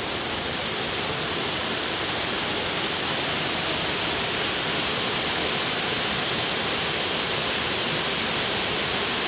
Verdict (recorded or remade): recorded